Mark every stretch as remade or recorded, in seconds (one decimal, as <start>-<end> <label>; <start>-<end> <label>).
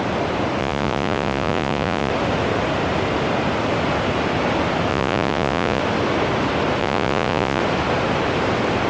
0.0-0.6 recorded; 0.6-2.1 remade; 2.1-4.9 recorded; 4.9-5.8 remade; 5.8-6.8 recorded; 6.8-7.6 remade; 7.6-8.9 recorded